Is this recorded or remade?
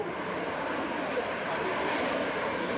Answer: remade